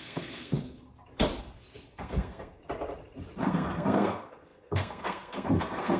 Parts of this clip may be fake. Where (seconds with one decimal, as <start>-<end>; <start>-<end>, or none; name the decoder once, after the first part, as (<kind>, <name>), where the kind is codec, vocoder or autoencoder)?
0.0-0.9 (codec, SNAC); 1.4-2.6; 3.4-6.0